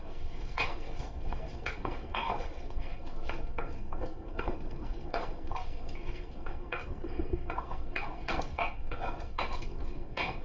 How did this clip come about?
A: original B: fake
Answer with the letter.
B